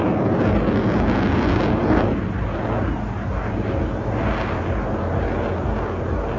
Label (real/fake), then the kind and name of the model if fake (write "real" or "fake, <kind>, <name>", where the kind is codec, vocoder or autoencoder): real